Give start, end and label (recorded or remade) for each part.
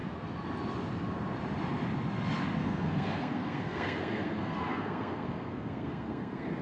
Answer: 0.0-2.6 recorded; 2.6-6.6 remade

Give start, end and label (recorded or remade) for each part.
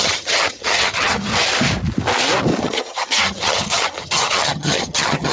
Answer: 0.0-1.3 remade; 1.3-2.6 recorded; 2.6-5.3 remade